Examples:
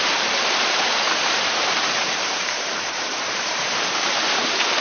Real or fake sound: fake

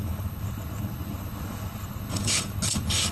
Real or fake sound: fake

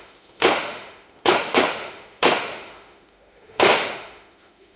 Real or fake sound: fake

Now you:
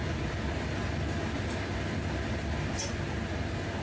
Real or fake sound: real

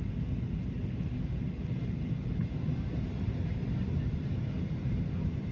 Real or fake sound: real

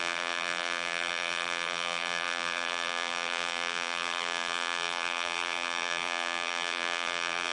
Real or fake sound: fake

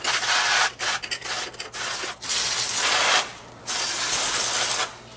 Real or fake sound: real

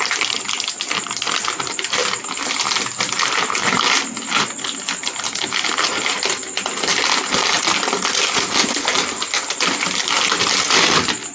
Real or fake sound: real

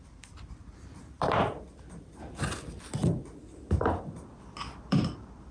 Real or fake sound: fake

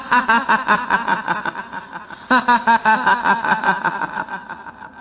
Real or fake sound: real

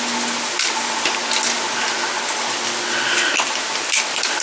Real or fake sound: real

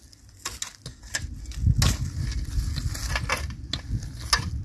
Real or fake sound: real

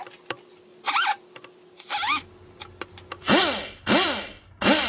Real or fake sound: real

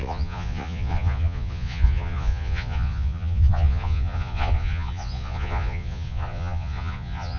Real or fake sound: fake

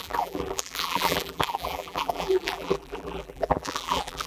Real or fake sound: fake